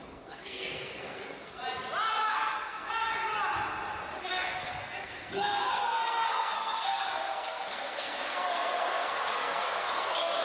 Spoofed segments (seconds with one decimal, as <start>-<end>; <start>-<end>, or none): 0.0-1.6; 2.3-3.1; 4.2-10.4